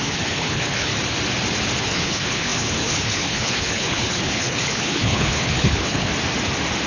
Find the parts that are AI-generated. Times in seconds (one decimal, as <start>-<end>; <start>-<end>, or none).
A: 0.0-0.9; 1.8-6.1